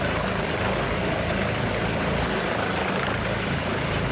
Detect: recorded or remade recorded